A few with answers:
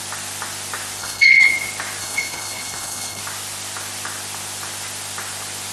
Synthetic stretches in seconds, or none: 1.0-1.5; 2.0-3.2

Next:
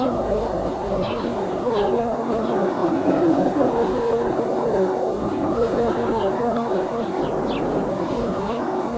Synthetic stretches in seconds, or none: 0.0-7.2; 7.9-9.0